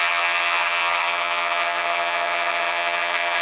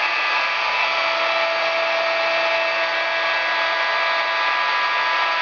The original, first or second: second